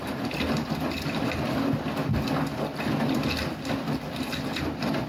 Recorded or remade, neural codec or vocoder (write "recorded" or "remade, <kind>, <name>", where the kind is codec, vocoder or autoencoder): recorded